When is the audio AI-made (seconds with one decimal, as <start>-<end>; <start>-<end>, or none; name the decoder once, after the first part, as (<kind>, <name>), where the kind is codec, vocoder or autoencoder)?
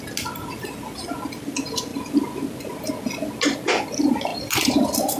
none